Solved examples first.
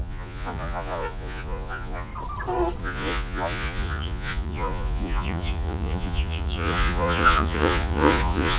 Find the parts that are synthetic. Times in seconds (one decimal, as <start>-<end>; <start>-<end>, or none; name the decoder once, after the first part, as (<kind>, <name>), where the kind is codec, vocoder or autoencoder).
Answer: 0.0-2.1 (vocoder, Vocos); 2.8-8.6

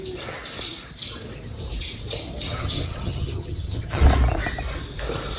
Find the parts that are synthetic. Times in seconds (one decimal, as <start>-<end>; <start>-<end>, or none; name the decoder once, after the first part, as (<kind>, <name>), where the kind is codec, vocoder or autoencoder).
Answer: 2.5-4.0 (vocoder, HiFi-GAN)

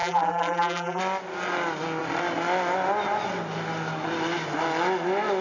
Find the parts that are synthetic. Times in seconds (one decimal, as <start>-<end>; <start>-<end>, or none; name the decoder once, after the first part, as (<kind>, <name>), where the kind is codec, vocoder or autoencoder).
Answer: 0.0-1.0 (vocoder, BigVGAN v2)

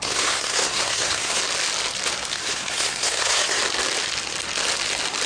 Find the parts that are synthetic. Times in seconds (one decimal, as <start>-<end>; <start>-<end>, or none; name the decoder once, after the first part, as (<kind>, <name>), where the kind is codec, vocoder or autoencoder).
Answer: 0.0-1.4 (codec, SNAC); 2.4-3.6